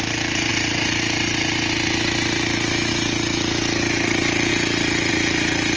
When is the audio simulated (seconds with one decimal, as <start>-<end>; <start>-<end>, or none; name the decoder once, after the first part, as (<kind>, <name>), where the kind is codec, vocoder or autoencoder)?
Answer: none